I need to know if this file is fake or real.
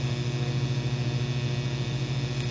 real